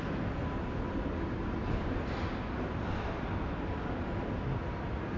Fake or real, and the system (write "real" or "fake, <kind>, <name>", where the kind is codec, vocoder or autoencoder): real